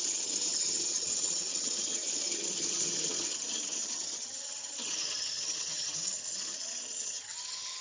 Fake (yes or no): yes